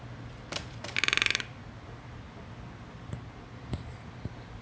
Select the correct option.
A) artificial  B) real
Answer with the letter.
B